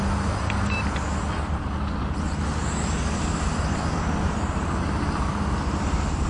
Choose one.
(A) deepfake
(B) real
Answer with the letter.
B